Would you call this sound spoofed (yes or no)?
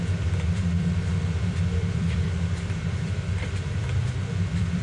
yes